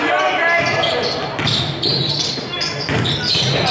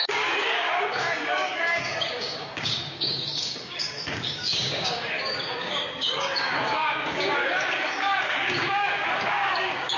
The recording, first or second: first